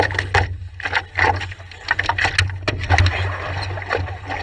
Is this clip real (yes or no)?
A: yes